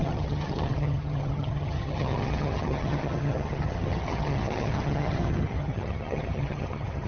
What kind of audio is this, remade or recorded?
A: remade